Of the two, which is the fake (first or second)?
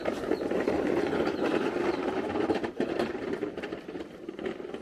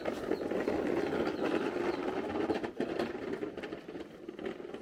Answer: first